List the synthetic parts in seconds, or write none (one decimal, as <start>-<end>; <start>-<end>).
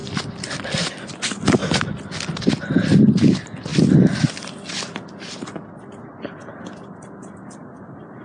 0.0-1.6; 2.4-3.7; 6.5-8.2